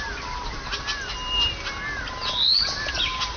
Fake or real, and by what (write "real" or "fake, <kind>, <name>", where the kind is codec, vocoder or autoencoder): real